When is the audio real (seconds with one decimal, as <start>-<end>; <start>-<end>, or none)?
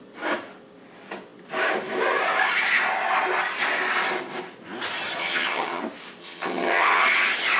0.0-5.2; 5.8-6.2; 7.0-7.6